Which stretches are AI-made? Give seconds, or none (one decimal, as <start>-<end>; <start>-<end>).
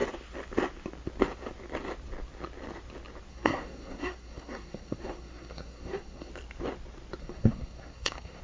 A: 3.3-6.3; 7.2-8.4